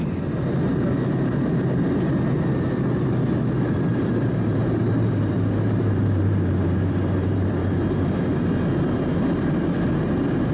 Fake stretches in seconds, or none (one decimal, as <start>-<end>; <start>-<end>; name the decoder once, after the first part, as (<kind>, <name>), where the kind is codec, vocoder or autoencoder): 3.9-8.2 (vocoder, BigVGAN v2)

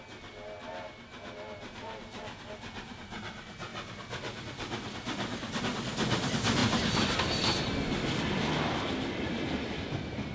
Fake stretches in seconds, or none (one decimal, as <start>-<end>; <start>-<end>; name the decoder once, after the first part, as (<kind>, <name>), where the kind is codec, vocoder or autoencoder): 1.8-3.2 (vocoder, BigVGAN v2)

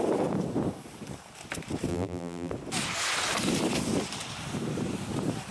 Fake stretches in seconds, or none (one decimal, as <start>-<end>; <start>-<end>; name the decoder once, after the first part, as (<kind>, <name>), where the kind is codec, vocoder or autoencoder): 1.9-2.5 (vocoder, BigVGAN v2)

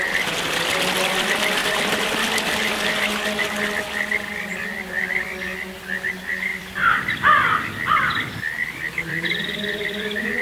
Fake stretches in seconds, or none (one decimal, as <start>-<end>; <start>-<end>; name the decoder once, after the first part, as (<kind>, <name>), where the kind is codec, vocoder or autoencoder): 1.6-2.5 (vocoder, BigVGAN v2); 4.6-5.2; 6.5-8.1; 8.6-10.4

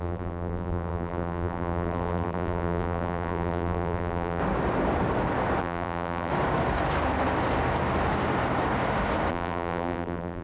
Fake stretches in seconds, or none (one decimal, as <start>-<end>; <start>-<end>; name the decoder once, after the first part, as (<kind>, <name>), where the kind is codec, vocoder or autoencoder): 0.0-4.4 (vocoder, BigVGAN v2); 5.6-6.3; 9.3-10.4

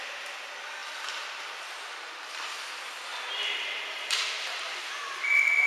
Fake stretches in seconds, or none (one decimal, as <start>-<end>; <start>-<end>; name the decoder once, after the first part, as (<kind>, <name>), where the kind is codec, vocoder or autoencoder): 0.8-1.6 (vocoder, BigVGAN v2); 3.1-4.8